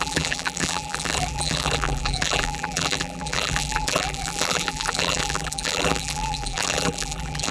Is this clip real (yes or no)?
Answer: no